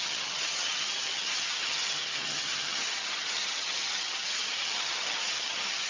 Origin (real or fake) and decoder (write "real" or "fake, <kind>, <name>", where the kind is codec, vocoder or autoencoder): fake, vocoder, HiFi-GAN